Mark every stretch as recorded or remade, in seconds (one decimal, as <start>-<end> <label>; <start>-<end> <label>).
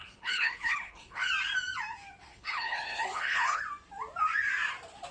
0.0-1.3 remade; 1.3-2.3 recorded; 2.3-3.6 remade; 3.6-5.1 recorded